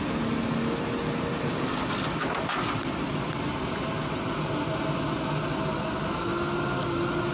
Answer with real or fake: real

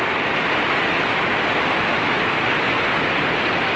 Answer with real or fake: real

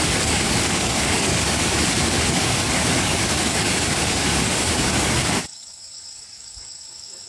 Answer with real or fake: fake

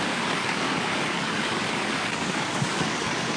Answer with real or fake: fake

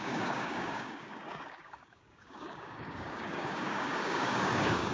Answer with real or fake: fake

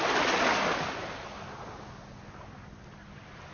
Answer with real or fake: real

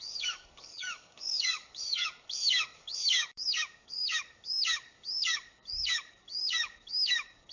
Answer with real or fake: fake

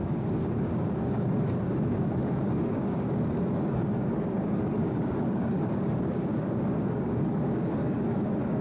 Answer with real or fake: fake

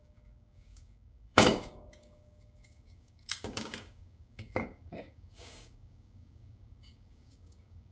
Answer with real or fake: fake